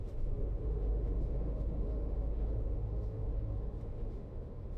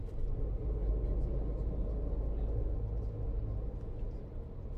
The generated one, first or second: first